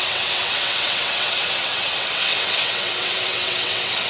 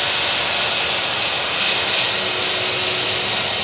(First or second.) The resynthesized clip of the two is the first